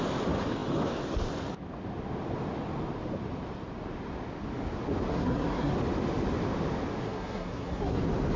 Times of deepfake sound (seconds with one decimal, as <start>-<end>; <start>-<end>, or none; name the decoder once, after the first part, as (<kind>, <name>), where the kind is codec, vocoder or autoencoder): 5.1-5.7 (codec, SNAC); 7.0-8.0